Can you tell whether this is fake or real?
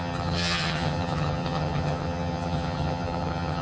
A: fake